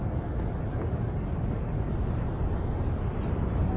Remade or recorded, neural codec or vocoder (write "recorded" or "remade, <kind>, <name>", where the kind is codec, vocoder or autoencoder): recorded